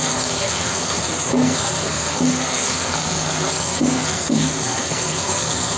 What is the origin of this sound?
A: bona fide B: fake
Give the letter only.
B